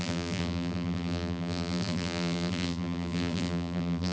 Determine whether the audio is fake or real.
fake